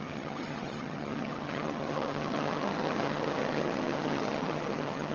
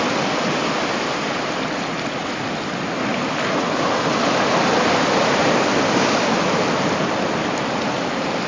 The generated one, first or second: first